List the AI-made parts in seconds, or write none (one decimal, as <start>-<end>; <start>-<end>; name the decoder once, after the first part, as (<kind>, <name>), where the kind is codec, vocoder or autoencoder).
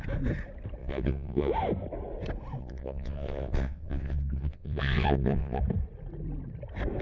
0.8-1.5 (vocoder, WaveNeXt); 2.6-5.6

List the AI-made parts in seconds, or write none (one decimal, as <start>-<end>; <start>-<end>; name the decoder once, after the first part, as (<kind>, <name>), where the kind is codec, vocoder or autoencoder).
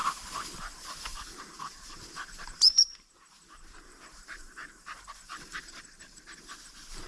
0.0-7.1 (vocoder, BigVGAN v2)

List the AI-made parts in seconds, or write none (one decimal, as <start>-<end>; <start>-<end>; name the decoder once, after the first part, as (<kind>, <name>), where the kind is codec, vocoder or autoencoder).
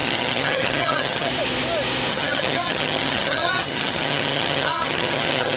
0.0-1.3 (vocoder, HiFi-GAN); 2.1-5.6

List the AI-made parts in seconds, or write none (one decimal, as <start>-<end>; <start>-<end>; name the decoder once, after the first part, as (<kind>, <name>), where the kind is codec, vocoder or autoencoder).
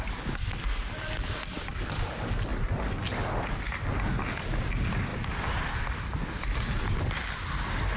none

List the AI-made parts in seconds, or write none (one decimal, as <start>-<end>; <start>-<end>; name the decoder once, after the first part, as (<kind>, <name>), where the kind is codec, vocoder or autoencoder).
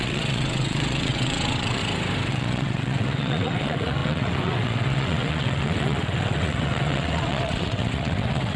0.0-1.8 (vocoder, WaveNeXt); 2.3-8.6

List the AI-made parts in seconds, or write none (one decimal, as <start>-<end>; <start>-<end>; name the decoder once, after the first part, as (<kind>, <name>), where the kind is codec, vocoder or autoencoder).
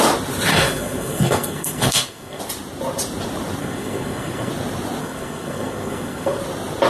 0.5-2.4 (codec, SNAC); 3.6-4.5; 5.0-6.4